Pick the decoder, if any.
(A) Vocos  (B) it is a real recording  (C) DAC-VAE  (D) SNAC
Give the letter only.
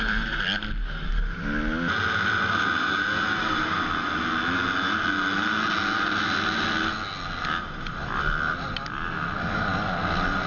B